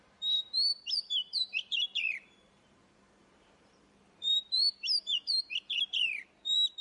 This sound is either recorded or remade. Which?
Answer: remade